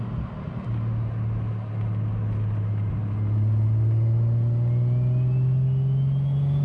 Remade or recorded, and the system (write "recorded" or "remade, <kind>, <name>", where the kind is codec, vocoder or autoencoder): recorded